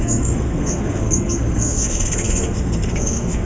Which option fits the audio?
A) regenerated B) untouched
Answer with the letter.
A